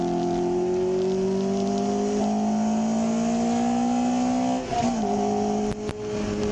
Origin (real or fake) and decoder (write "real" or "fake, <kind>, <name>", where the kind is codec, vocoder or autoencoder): real